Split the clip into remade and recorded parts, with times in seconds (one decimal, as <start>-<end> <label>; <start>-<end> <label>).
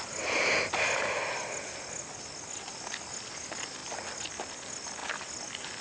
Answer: 0.0-5.8 recorded